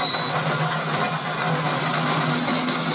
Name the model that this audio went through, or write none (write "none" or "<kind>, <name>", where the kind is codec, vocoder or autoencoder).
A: none